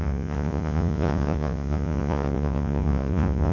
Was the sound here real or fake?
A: fake